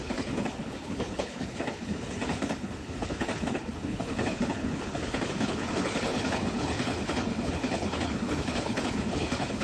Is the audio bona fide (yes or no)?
no